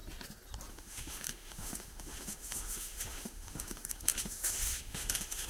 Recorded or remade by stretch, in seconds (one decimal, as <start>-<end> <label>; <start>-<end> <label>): 0.0-0.7 recorded; 0.7-5.5 remade